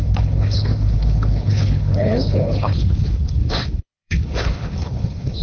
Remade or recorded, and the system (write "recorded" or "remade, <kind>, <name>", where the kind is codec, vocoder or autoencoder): remade, codec, HILCodec